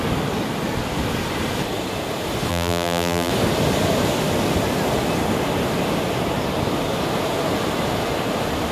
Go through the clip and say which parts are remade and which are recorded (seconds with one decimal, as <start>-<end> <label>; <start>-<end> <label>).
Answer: 0.0-2.5 recorded; 2.5-3.3 remade; 3.3-8.7 recorded

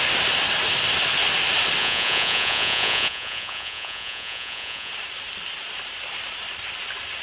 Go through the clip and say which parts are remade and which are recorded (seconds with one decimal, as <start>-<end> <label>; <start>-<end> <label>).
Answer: 0.0-1.8 recorded; 1.8-4.9 remade; 4.9-7.2 recorded

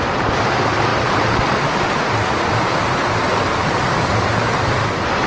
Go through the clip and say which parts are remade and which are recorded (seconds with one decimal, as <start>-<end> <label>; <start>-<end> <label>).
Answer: 0.0-5.3 recorded

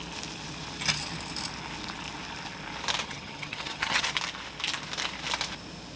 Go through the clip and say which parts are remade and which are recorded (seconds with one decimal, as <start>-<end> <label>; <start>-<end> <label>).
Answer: 0.0-3.0 recorded; 3.0-4.1 remade; 4.1-6.0 recorded

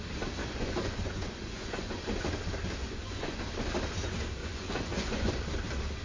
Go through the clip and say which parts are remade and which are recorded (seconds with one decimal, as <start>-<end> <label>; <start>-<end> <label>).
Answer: 0.0-0.4 recorded; 0.4-2.0 remade; 2.0-2.8 recorded; 2.8-3.4 remade; 3.4-4.4 recorded; 4.4-5.3 remade; 5.3-6.0 recorded

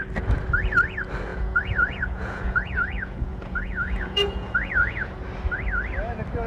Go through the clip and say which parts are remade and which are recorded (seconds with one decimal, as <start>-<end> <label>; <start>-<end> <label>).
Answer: 0.0-1.3 recorded; 1.3-5.2 remade; 5.2-6.5 recorded

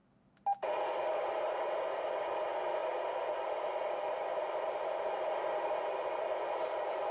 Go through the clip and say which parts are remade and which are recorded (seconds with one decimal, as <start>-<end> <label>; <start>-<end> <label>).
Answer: 0.0-7.1 recorded